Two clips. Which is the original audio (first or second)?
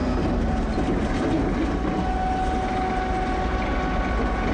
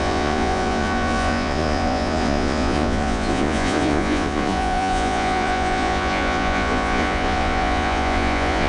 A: first